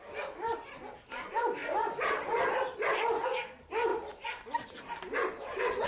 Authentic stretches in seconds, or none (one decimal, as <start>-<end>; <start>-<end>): 0.0-1.6; 2.2-3.9

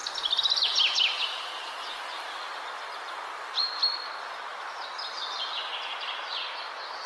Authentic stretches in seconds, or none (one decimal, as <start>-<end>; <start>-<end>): 1.7-6.4

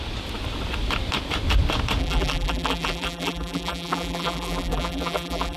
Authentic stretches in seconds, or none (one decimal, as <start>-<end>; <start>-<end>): 0.0-2.0

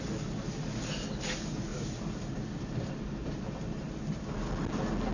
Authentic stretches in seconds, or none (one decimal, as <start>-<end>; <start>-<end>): 0.0-1.7; 4.0-5.1